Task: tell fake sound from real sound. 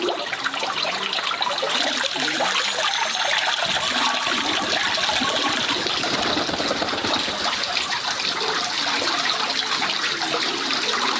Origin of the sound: real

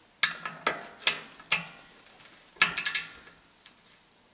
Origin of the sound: real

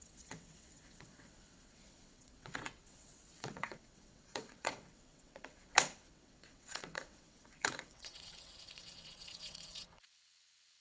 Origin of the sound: fake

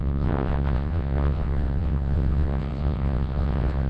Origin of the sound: fake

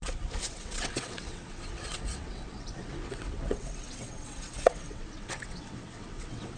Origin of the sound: fake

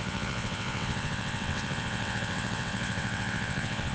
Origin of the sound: fake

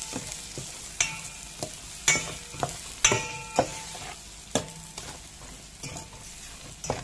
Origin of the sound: real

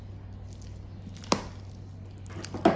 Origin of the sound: real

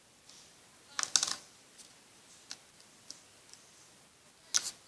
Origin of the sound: real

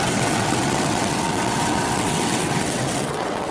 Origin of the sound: fake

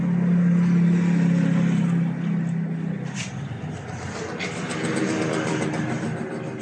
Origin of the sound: real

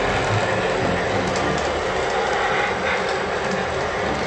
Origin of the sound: real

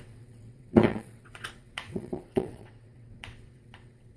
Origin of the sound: fake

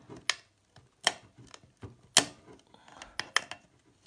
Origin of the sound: real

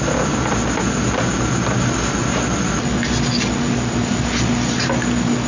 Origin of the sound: real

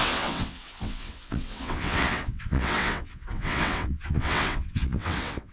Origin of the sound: fake